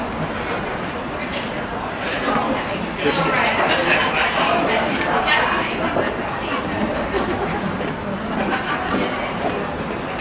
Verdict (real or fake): real